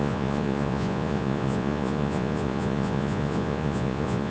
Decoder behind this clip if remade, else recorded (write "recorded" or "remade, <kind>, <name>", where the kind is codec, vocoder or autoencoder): remade, vocoder, Vocos